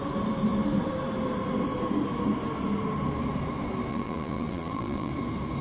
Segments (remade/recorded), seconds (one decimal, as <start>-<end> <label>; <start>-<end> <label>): 0.0-3.9 recorded; 3.9-5.1 remade; 5.1-5.6 recorded